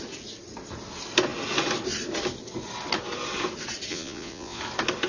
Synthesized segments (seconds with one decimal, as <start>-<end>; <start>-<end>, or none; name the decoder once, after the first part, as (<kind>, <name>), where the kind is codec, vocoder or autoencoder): 3.9-4.6 (vocoder, Vocos)